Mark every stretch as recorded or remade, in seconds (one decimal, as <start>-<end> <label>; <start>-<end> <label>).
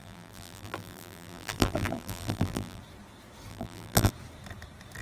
0.0-2.8 remade; 2.8-3.5 recorded; 3.5-4.1 remade; 4.1-5.0 recorded